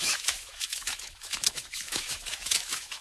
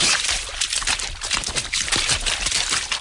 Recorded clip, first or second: second